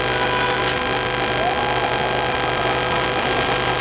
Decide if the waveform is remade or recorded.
recorded